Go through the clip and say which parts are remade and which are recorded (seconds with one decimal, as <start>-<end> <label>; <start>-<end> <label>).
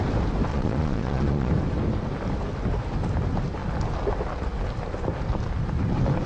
0.0-0.5 recorded; 0.5-1.5 remade; 1.5-6.3 recorded